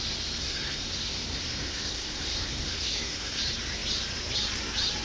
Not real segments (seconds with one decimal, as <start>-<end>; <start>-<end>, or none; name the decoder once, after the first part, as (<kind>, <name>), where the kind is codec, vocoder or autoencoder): 0.4-3.4 (codec, SNAC)

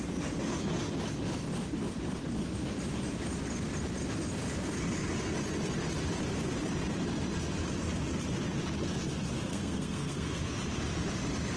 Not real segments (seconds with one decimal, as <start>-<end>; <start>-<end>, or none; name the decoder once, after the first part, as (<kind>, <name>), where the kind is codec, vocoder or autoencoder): 9.5-10.4 (codec, SNAC)